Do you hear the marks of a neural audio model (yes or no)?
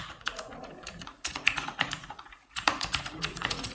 yes